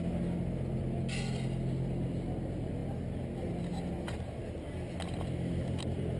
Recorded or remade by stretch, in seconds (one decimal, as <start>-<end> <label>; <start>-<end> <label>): 0.0-6.2 recorded